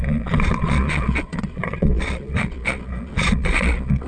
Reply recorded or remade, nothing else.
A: remade